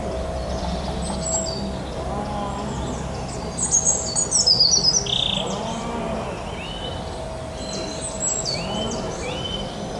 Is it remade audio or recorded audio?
recorded